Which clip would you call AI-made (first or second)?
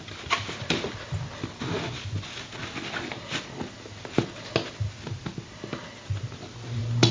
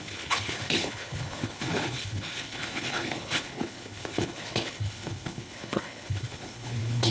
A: second